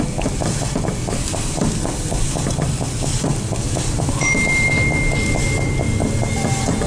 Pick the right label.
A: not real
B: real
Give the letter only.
A